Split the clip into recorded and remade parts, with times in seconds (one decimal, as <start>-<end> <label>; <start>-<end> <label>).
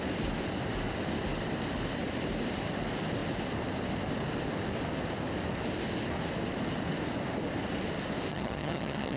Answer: 0.0-8.3 recorded; 8.3-9.2 remade